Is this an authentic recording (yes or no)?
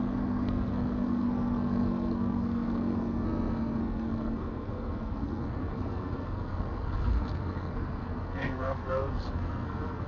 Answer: no